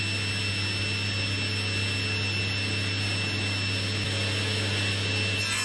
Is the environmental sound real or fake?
real